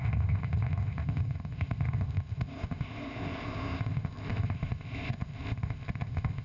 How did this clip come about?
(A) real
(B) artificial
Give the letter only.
B